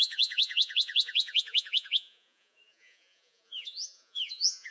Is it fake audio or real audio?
fake